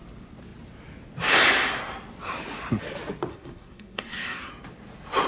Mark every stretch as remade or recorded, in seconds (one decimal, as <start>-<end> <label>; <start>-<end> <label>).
0.0-3.3 recorded; 3.3-4.5 remade; 4.5-5.3 recorded

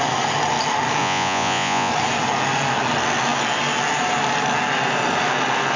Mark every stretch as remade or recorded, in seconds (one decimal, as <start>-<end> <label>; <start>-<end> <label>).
0.0-1.0 recorded; 1.0-1.9 remade; 1.9-5.8 recorded

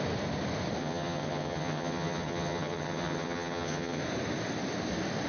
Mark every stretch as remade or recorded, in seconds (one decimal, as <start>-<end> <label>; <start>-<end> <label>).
0.0-0.8 recorded; 0.8-4.0 remade; 4.0-5.3 recorded

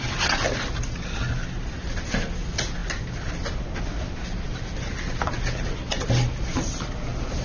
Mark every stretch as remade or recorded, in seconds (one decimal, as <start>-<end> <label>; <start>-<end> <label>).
0.0-7.4 recorded

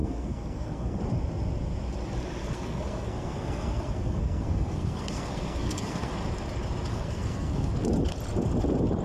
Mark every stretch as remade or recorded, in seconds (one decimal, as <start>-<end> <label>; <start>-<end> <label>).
0.0-1.0 remade; 1.0-2.4 recorded; 2.4-6.1 remade; 6.1-6.9 recorded; 6.9-7.7 remade; 7.7-9.0 recorded

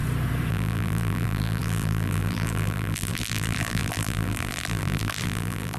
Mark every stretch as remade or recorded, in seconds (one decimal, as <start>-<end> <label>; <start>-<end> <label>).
0.0-0.5 recorded; 0.5-5.8 remade

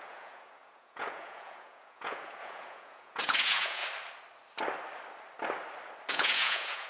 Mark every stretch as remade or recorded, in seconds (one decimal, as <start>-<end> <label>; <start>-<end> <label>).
0.0-3.8 remade; 3.8-6.1 recorded; 6.1-6.9 remade

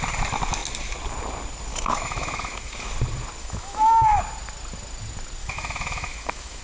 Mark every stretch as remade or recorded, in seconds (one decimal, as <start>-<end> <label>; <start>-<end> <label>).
0.0-1.7 recorded; 1.7-2.9 remade; 2.9-3.4 recorded; 3.4-4.2 remade; 4.2-5.4 recorded; 5.4-6.6 remade